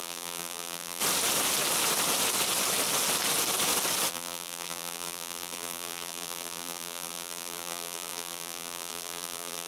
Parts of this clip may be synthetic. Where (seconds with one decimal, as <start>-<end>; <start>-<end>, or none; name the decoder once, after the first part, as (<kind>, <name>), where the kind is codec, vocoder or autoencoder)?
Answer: 0.0-1.0 (vocoder, BigVGAN v2); 4.1-9.7